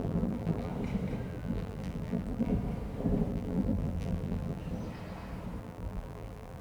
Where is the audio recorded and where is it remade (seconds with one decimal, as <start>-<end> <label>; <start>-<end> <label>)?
0.0-0.7 remade; 0.7-1.3 recorded; 1.3-2.5 remade; 2.5-3.3 recorded; 3.3-4.6 remade; 4.6-5.6 recorded; 5.6-6.6 remade